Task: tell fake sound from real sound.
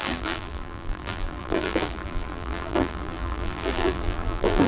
fake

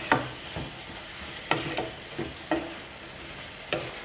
real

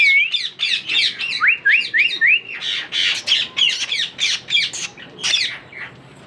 real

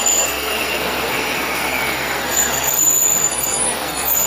fake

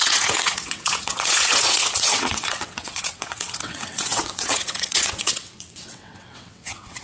fake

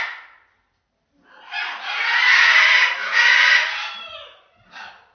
real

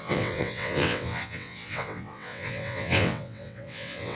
fake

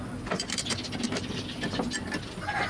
real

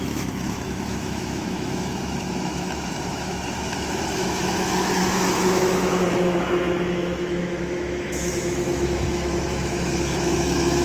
fake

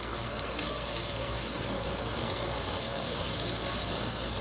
fake